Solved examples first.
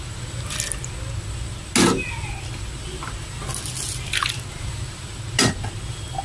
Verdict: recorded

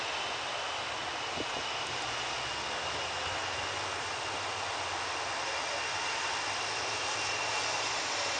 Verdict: recorded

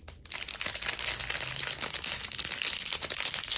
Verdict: recorded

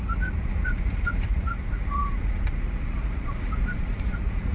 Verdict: remade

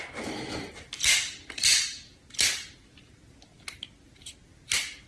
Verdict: recorded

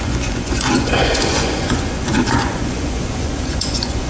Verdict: remade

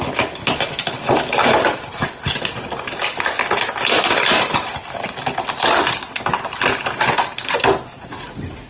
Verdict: recorded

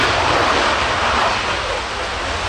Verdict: recorded